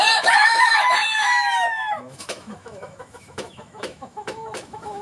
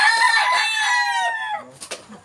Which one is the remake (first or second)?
first